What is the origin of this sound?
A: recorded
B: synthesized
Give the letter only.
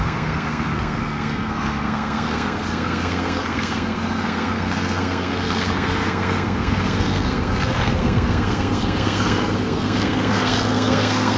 B